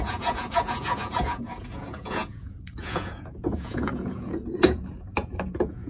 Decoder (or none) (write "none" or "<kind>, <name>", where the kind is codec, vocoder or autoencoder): vocoder, Vocos